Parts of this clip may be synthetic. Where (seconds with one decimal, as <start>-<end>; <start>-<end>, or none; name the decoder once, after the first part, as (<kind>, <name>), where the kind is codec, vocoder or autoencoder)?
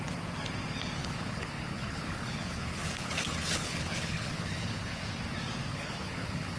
1.0-5.0 (codec, HILCodec); 5.7-6.6